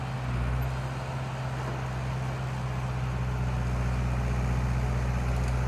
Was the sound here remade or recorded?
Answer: recorded